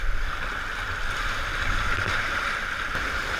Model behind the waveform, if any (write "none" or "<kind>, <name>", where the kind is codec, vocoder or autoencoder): none